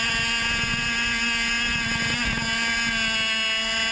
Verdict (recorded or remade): recorded